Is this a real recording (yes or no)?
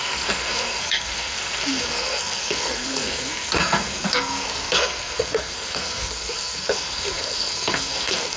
no